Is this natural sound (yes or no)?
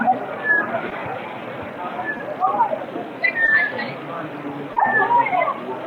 yes